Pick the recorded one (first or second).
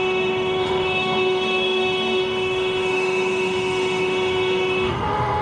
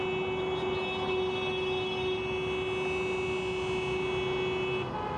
second